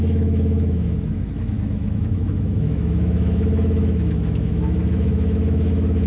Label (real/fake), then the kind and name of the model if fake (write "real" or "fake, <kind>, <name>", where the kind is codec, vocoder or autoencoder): fake, autoencoder, DAC-VAE